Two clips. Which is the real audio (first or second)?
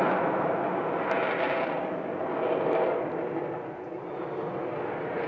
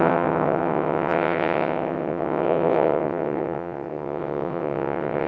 first